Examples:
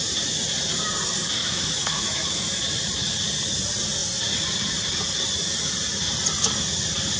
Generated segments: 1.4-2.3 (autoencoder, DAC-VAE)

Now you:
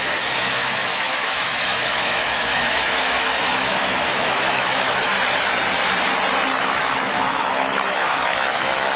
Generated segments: 0.0-5.1 (autoencoder, DAC-VAE); 6.6-9.0